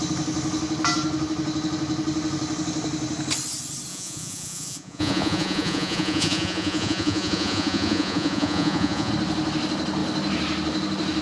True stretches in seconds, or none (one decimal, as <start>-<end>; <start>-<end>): 0.0-3.9; 9.1-11.2